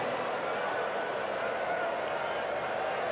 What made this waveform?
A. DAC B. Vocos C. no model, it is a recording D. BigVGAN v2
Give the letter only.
C